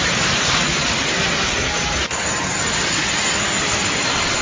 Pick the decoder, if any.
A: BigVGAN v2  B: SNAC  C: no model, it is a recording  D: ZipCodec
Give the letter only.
C